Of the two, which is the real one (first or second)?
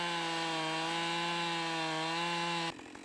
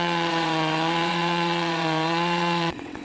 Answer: first